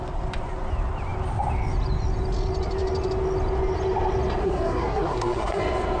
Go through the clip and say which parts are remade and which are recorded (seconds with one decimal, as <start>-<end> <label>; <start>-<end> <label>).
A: 0.0-4.4 recorded; 4.4-5.6 remade; 5.6-6.0 recorded